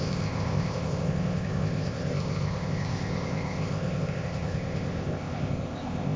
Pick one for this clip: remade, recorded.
remade